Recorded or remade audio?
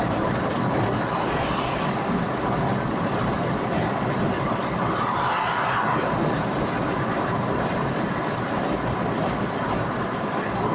recorded